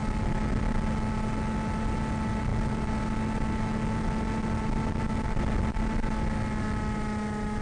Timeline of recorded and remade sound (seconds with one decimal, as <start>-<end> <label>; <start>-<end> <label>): 0.0-7.6 recorded